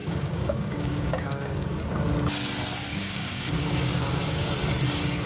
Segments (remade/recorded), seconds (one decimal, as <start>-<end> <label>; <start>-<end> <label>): 0.0-1.9 remade; 1.9-2.9 recorded; 2.9-4.5 remade; 4.5-5.3 recorded